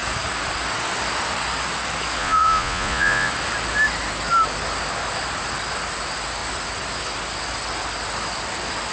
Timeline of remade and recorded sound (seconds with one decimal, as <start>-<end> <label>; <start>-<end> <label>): 0.0-2.2 recorded; 2.2-3.3 remade; 3.3-8.9 recorded